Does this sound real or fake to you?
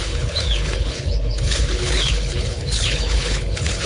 fake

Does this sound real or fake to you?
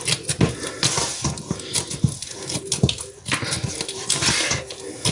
real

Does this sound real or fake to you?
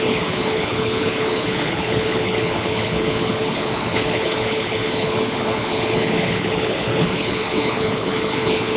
fake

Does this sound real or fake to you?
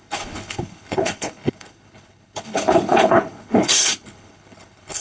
fake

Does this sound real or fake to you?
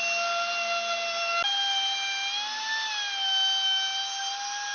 real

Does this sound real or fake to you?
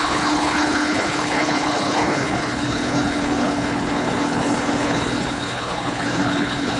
fake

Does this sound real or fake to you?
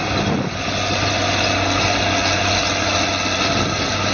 real